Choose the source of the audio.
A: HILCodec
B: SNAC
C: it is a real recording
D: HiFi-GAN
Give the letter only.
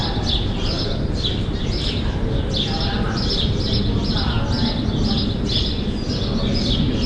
C